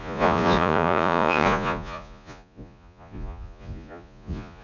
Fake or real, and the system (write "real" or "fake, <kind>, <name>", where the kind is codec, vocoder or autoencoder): fake, vocoder, Vocos